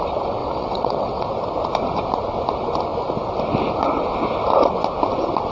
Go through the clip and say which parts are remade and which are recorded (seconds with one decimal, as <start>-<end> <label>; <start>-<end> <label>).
0.0-0.4 recorded; 0.4-1.3 remade; 1.3-5.5 recorded